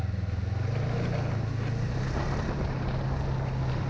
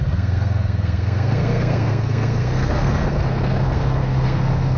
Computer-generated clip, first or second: second